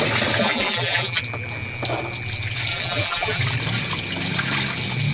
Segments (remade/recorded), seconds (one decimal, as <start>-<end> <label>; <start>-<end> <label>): 0.0-0.4 recorded; 0.4-1.2 remade; 1.2-2.7 recorded; 2.7-3.4 remade; 3.4-5.1 recorded